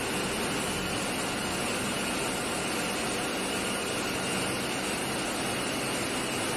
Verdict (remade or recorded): recorded